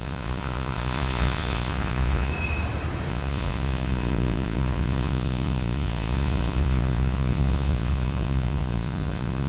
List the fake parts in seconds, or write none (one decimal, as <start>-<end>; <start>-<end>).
0.0-2.3; 3.1-9.5